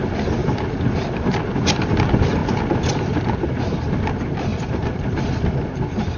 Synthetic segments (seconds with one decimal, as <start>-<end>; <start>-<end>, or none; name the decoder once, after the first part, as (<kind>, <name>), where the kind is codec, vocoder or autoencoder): 2.4-3.5 (vocoder, BigVGAN v2); 4.5-5.4